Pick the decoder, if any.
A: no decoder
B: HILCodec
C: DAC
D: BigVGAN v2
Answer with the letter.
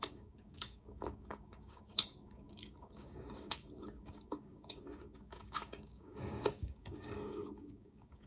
C